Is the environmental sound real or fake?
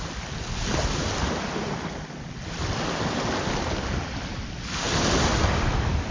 real